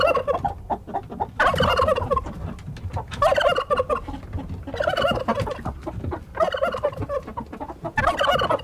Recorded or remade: recorded